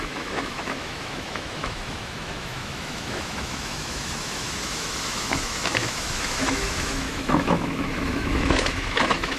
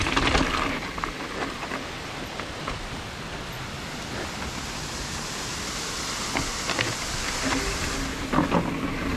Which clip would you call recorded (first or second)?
second